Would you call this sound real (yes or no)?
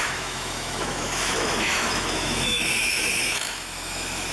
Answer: no